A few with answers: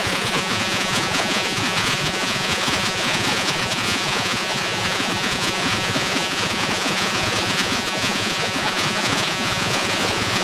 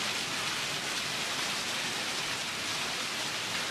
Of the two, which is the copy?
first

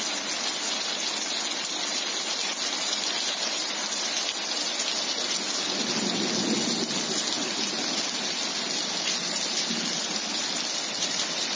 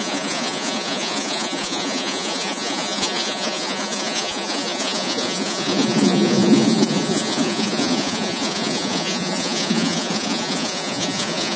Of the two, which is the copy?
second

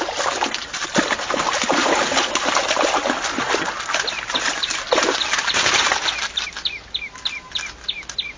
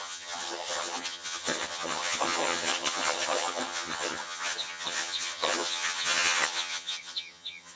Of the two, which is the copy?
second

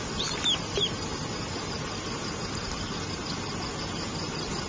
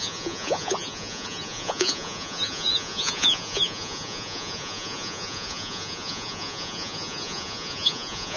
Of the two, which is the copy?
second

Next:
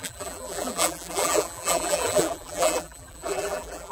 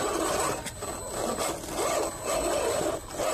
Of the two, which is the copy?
first